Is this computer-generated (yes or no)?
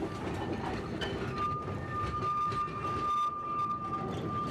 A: no